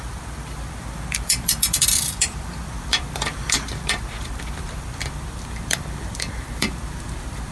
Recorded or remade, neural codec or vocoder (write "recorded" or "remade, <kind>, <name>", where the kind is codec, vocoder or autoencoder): remade, vocoder, BigVGAN v2